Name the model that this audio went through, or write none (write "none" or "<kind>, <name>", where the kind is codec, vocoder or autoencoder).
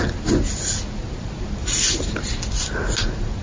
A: none